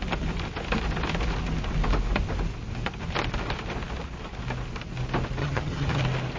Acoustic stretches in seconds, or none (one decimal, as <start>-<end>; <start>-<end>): 0.0-5.4; 6.0-6.4